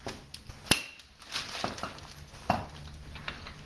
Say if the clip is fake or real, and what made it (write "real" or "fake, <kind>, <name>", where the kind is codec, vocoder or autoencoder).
real